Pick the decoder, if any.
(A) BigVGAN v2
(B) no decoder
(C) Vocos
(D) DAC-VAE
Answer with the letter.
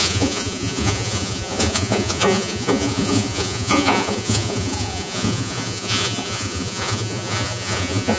C